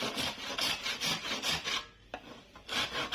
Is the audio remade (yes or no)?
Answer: no